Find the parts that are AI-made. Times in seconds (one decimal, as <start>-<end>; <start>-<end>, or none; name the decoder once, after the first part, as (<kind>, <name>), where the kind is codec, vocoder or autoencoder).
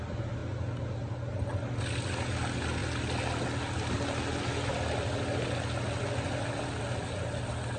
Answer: none